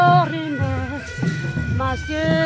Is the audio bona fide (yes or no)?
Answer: no